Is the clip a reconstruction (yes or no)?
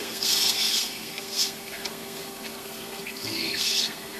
yes